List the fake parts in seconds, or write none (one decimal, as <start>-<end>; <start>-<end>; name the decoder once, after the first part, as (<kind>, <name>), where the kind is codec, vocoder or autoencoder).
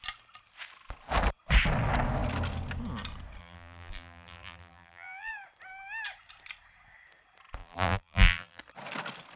3.4-5.3 (vocoder, BigVGAN v2); 7.6-8.6